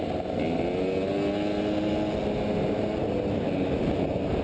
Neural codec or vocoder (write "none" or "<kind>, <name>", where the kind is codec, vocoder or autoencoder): none